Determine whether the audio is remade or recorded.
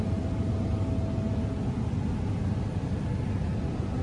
recorded